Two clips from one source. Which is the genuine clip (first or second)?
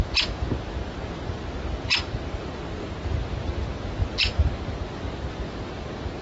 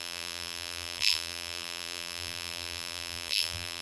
first